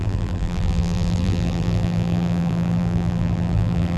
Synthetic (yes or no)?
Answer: yes